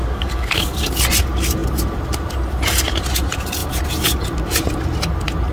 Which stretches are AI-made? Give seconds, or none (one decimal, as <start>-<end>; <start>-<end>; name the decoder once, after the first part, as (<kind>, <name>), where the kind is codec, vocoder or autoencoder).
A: 0.0-0.9 (codec, DAC)